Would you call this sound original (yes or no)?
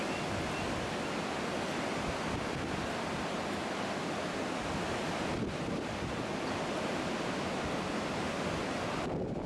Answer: yes